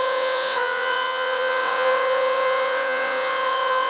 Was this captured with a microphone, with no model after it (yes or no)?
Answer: no